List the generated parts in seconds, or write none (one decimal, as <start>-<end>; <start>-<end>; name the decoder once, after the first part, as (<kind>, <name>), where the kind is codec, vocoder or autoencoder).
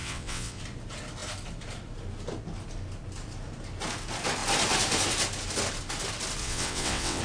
0.0-0.6 (vocoder, WaveNeXt); 6.4-7.2